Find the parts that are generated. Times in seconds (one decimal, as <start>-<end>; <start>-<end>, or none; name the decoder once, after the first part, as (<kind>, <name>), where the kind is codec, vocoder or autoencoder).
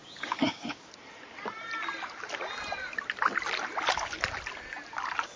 0.0-0.9 (codec, DAC)